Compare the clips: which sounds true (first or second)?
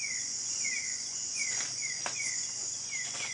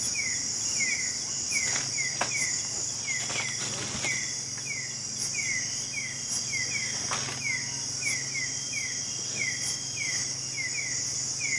second